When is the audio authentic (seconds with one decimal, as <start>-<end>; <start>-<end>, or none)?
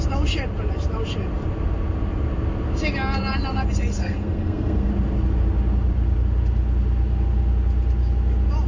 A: 0.0-4.0; 4.9-8.7